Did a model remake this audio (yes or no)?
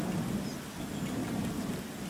no